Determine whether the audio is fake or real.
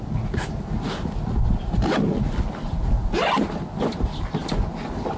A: real